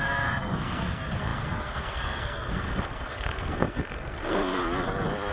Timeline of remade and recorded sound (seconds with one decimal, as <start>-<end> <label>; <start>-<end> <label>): 0.0-4.6 remade; 4.6-5.3 recorded